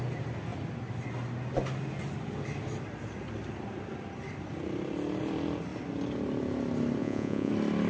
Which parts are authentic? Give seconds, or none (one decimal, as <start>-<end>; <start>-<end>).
0.0-7.0; 7.5-7.9

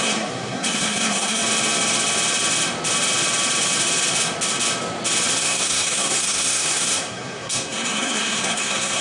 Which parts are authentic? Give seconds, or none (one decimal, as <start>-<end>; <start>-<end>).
1.4-5.4

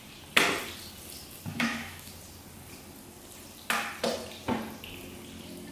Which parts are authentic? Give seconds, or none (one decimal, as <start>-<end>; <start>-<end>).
0.0-1.5; 2.1-5.7

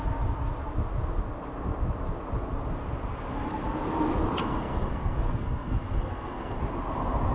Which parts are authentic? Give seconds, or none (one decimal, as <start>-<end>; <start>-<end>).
0.0-4.4; 6.6-7.3

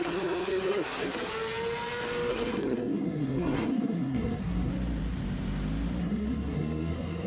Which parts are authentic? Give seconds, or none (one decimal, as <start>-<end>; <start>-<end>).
1.3-2.3; 4.7-6.0

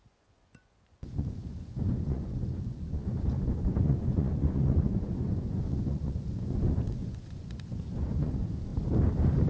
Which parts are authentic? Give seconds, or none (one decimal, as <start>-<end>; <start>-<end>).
8.7-9.5

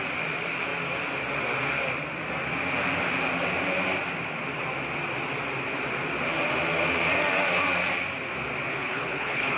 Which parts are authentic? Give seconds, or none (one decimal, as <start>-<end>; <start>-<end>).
0.0-8.8

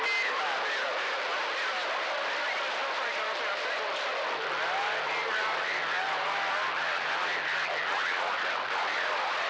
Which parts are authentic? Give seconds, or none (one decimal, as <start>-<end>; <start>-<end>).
0.0-9.5